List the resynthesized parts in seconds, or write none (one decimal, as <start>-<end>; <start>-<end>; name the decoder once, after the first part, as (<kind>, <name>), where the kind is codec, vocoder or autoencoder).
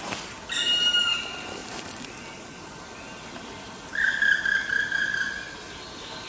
none